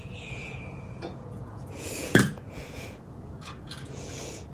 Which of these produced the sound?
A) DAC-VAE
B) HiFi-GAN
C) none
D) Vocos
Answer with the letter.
D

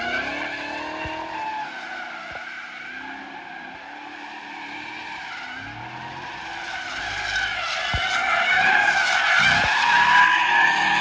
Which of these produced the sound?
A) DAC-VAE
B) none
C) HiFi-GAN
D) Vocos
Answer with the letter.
B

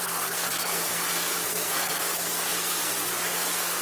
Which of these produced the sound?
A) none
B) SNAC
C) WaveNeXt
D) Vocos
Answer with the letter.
B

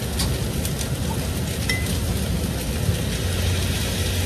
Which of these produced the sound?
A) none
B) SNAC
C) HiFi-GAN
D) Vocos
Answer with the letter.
A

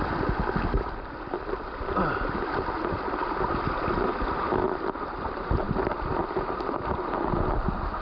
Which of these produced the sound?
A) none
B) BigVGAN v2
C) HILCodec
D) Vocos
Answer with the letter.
A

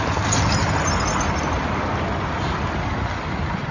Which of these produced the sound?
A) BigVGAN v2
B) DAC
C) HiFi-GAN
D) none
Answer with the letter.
D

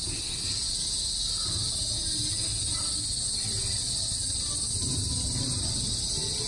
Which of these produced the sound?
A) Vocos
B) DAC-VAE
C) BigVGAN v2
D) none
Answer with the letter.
D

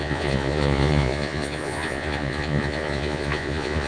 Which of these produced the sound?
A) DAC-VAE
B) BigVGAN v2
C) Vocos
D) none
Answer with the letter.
C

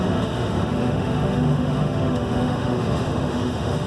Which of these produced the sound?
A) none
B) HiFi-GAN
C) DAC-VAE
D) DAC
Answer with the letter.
C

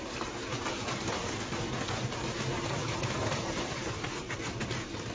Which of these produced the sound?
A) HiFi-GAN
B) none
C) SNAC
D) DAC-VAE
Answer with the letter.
B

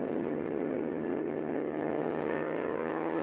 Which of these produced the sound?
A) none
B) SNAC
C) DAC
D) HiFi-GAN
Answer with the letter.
D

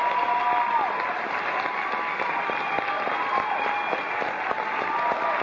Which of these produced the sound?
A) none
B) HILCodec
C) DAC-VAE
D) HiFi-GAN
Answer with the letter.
A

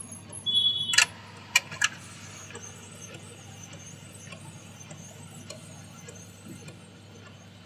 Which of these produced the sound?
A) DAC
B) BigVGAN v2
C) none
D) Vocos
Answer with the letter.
C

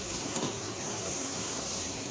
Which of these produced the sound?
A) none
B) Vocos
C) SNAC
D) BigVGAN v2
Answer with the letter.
C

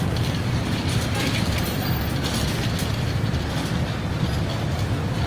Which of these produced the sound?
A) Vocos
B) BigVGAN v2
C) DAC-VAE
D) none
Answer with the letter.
D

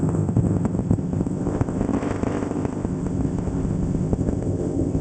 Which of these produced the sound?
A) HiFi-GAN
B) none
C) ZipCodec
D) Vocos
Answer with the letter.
C